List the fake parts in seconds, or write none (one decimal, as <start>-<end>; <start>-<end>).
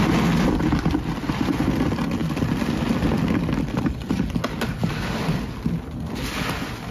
none